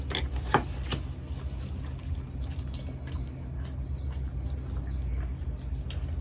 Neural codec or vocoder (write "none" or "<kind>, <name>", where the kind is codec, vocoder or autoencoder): none